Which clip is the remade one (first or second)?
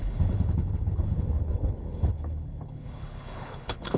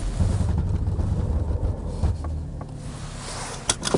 first